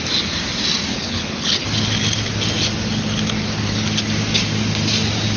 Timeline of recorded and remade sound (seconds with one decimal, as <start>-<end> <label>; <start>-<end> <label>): 0.0-0.9 recorded; 0.9-1.6 remade; 1.6-5.4 recorded